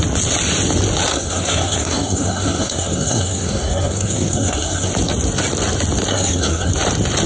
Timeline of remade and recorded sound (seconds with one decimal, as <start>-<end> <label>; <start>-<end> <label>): 0.0-1.1 recorded; 1.1-4.9 remade; 4.9-6.1 recorded; 6.1-6.7 remade; 6.7-7.3 recorded